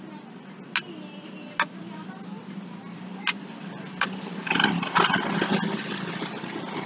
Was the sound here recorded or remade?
recorded